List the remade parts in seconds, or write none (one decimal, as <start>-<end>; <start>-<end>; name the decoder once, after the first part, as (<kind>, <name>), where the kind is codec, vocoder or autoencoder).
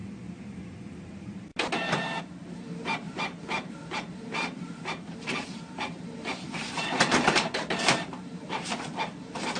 0.0-1.5 (vocoder, BigVGAN v2); 2.2-9.6